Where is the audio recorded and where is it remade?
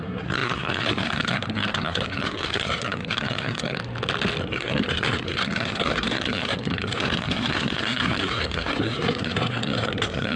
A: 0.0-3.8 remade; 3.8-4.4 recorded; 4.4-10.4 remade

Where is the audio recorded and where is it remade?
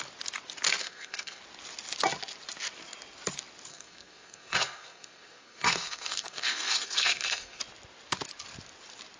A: 0.0-0.8 recorded; 0.8-1.4 remade; 1.4-3.7 recorded; 3.7-7.6 remade; 7.6-9.2 recorded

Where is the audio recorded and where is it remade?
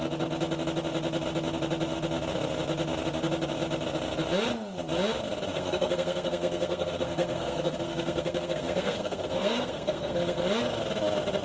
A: 0.0-5.5 recorded; 5.5-10.4 remade; 10.4-11.4 recorded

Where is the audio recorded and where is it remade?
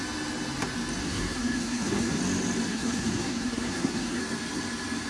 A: 0.0-1.0 recorded; 1.0-2.2 remade; 2.2-2.7 recorded; 2.7-4.2 remade; 4.2-5.1 recorded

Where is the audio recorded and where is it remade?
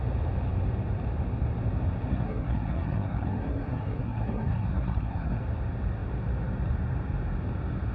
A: 0.0-2.1 recorded; 2.1-5.4 remade; 5.4-7.9 recorded